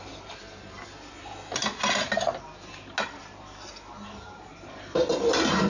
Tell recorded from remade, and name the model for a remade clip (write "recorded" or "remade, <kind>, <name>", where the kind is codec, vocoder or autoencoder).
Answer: recorded